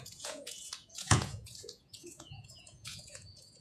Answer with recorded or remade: remade